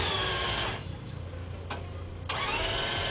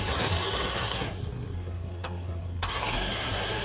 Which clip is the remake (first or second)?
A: second